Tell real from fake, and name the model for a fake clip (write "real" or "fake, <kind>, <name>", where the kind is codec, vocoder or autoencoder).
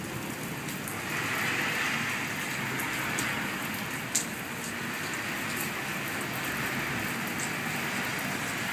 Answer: real